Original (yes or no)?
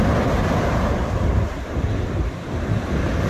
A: yes